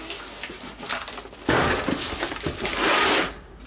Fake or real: real